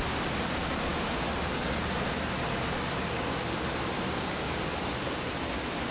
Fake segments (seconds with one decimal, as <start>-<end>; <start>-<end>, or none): none